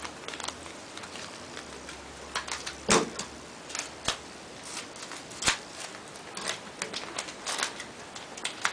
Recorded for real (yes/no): yes